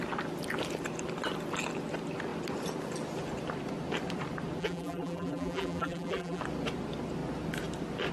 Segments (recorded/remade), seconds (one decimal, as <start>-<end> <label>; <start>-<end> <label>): 0.0-4.6 recorded; 4.6-6.4 remade; 6.4-8.1 recorded